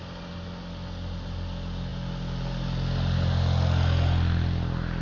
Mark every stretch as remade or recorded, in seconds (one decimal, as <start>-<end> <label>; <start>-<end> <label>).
0.0-5.0 recorded